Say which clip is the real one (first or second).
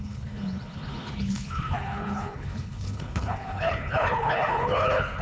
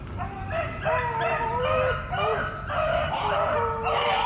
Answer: second